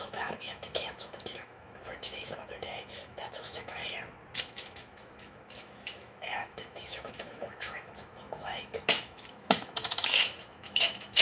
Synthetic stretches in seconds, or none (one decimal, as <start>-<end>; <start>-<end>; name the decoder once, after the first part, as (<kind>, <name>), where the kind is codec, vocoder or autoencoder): 0.0-3.8 (autoencoder, DAC-VAE); 4.4-11.2